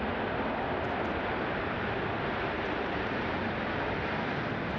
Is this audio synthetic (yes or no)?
no